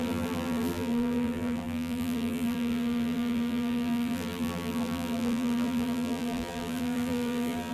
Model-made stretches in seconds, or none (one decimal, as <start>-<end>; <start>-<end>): 0.0-7.7